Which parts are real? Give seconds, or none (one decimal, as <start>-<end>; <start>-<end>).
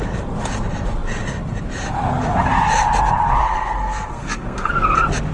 0.0-3.4; 4.7-5.3